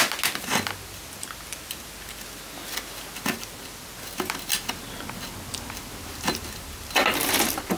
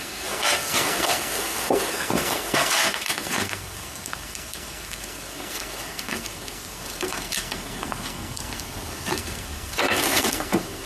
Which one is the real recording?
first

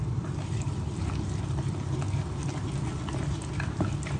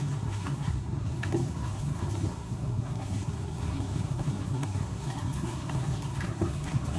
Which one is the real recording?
first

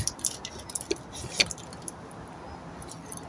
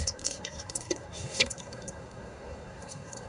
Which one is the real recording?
first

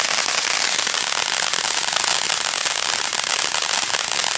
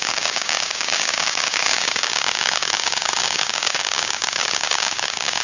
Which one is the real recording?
first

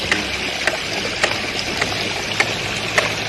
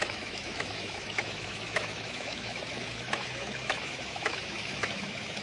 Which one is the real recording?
first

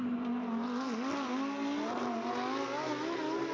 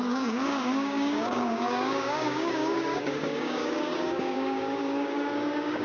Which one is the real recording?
first